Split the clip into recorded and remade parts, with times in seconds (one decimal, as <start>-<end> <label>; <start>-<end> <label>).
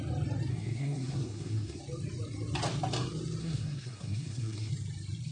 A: 0.0-0.5 recorded; 0.5-1.8 remade; 1.8-3.4 recorded; 3.4-4.7 remade; 4.7-5.3 recorded